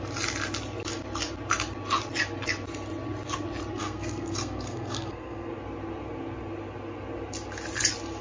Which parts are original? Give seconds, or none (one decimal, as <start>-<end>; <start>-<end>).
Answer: 0.0-3.7; 5.5-8.2